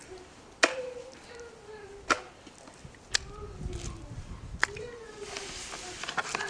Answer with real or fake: real